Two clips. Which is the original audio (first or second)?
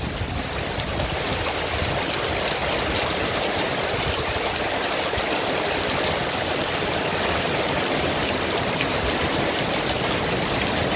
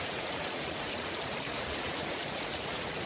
first